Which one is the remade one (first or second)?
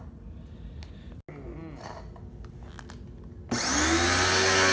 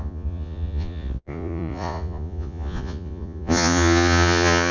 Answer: second